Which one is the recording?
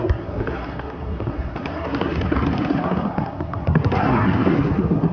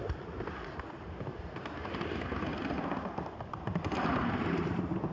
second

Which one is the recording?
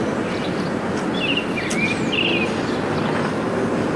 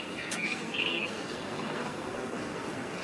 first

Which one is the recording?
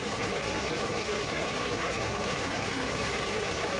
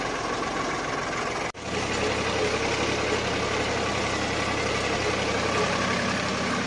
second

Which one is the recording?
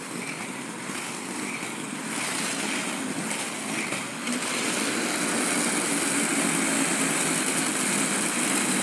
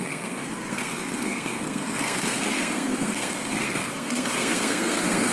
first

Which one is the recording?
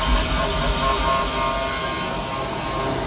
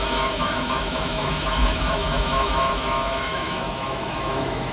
first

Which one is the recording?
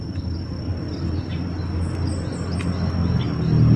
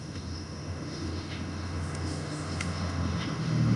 first